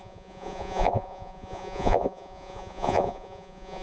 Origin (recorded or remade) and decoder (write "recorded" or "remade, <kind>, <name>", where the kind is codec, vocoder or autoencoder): remade, vocoder, Vocos